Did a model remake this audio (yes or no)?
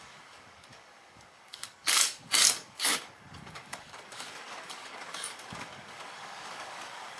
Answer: yes